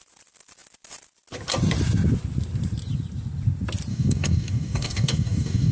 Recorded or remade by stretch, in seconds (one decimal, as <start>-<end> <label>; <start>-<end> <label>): 0.0-3.9 recorded; 3.9-5.7 remade